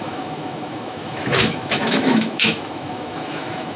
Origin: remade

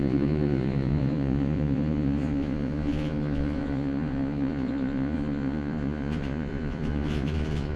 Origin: remade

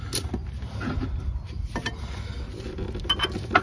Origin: recorded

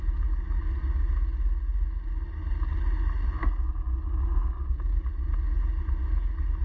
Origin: recorded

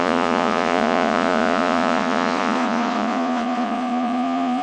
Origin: remade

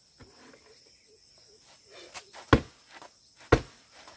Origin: recorded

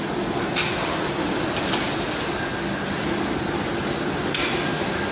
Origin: recorded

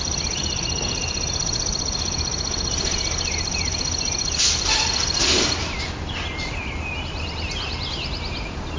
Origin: recorded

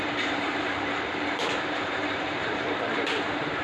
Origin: remade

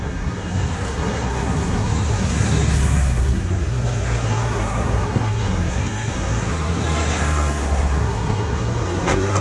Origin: remade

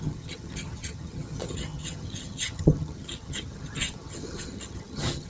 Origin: remade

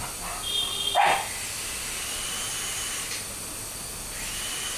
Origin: recorded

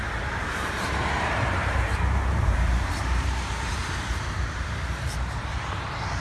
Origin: remade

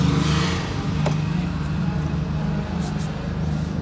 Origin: recorded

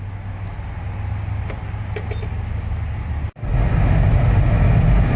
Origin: recorded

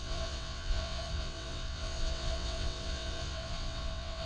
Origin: remade